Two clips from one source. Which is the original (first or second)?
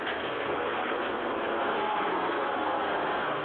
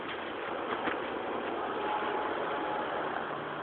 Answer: second